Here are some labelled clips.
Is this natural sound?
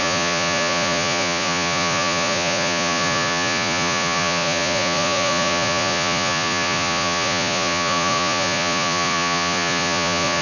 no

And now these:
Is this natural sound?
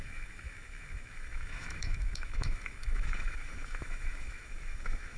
no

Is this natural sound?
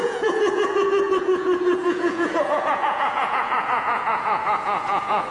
no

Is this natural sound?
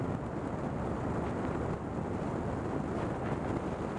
yes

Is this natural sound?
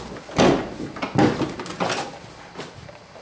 yes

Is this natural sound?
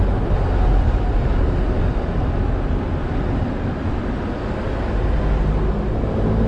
yes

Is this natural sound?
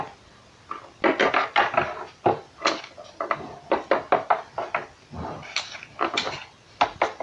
yes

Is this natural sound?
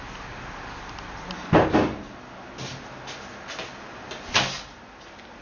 yes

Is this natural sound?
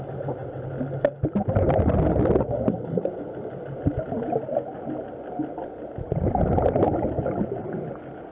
yes